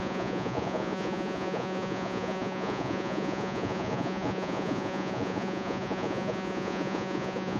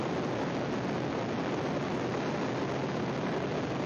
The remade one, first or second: first